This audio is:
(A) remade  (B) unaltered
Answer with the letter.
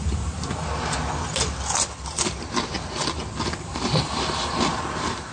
B